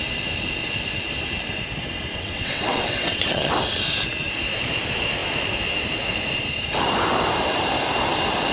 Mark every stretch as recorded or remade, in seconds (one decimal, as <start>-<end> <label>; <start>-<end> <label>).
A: 0.0-2.1 recorded; 2.1-3.5 remade; 3.5-8.5 recorded